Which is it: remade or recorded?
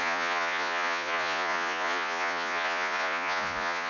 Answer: remade